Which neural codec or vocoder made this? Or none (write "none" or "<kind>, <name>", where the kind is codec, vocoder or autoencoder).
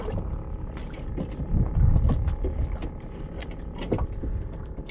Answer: none